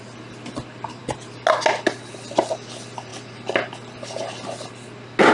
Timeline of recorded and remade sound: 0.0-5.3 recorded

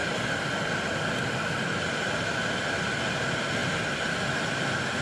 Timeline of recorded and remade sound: 0.0-3.0 remade; 3.0-3.6 recorded; 3.6-4.3 remade; 4.3-5.0 recorded